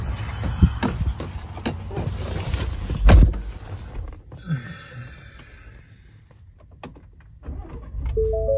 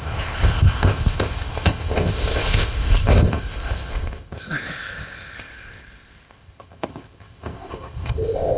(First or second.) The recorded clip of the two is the first